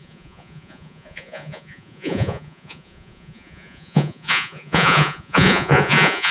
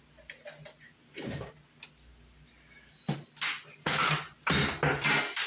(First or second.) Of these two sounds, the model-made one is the first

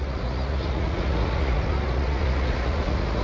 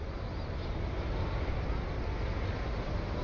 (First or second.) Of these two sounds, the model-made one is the first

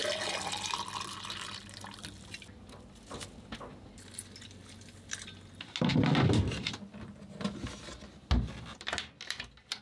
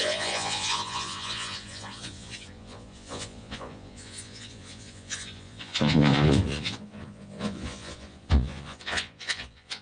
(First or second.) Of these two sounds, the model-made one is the second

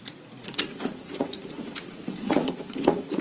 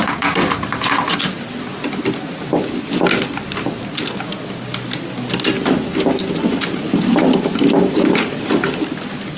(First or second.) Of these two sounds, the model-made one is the first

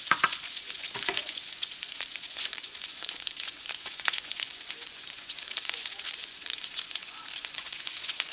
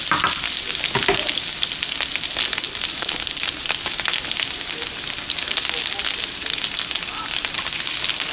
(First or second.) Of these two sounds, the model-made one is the first